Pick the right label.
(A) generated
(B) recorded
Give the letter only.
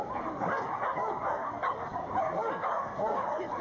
A